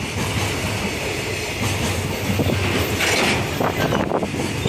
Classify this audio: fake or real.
real